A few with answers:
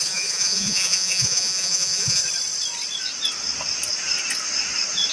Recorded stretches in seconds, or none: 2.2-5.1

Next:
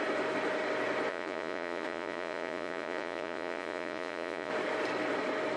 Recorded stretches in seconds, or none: 0.0-1.1; 4.5-5.6

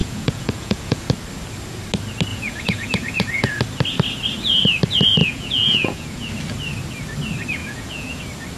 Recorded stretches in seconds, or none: 1.1-2.3; 3.6-5.2; 6.3-7.6; 8.2-8.6

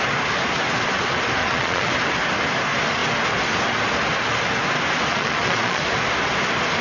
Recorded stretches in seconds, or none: 0.0-1.4; 1.9-5.1; 5.8-6.8

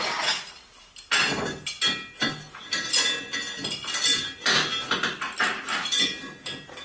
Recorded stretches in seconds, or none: 0.0-6.8

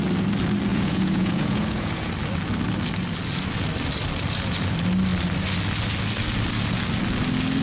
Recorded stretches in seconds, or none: 0.0-0.7; 2.1-7.6

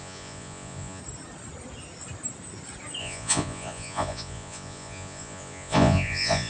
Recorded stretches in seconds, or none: 1.0-3.0

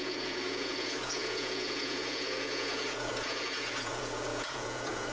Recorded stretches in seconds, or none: none